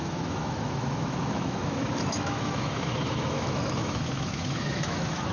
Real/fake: fake